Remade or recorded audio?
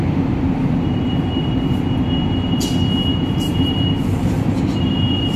recorded